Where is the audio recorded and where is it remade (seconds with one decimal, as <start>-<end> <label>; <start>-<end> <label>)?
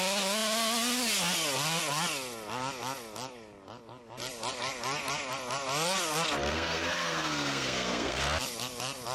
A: 0.0-6.5 recorded; 6.5-8.2 remade; 8.2-9.1 recorded